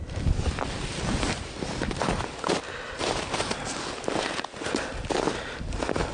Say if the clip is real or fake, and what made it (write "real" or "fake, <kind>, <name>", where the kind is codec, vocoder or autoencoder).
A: real